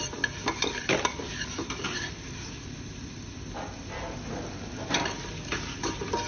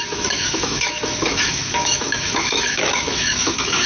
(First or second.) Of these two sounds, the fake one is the second